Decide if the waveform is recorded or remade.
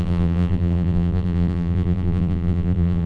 remade